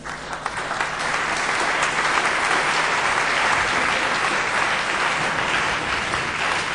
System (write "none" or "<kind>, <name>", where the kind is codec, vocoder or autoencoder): none